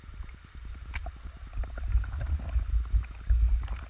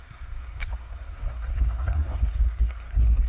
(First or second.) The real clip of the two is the first